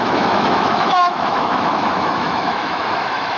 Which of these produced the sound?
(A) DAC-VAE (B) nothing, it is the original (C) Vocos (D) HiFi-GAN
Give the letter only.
A